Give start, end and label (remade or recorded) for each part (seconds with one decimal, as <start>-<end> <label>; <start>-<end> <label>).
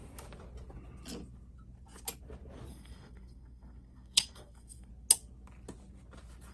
0.0-2.7 recorded; 2.7-4.9 remade; 4.9-6.5 recorded